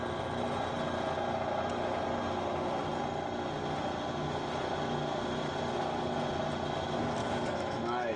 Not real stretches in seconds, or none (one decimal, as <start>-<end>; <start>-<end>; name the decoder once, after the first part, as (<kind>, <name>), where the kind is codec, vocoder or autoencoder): 7.2-8.2 (autoencoder, DAC-VAE)

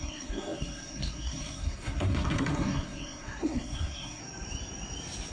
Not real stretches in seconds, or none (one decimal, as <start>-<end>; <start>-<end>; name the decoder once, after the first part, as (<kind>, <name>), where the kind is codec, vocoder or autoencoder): 0.0-4.2 (codec, SNAC)

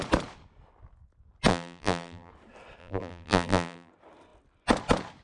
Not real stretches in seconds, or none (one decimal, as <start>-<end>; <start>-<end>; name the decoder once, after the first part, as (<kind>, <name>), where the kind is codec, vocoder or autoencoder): 1.5-2.3 (vocoder, BigVGAN v2); 2.8-3.9

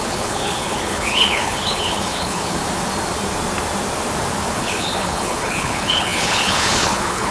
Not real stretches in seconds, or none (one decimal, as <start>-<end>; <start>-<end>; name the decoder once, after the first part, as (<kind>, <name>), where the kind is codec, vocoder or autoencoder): 0.0-2.6 (codec, HILCodec); 4.5-7.3

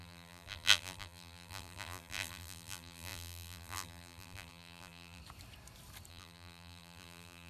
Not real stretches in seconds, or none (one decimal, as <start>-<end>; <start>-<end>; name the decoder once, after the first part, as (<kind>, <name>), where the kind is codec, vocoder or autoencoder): 0.0-5.2 (vocoder, BigVGAN v2); 6.1-7.5